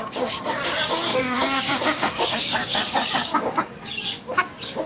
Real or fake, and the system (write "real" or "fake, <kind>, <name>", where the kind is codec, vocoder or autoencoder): fake, codec, DAC